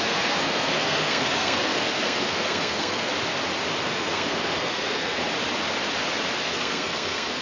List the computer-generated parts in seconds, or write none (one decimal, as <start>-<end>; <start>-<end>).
0.0-3.1; 3.8-5.2; 6.4-7.4